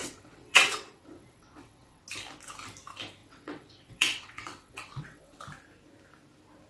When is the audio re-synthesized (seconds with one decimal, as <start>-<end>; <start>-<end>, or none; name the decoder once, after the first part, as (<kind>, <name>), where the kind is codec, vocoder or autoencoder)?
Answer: 0.0-2.0 (vocoder, WaveNeXt); 3.2-5.4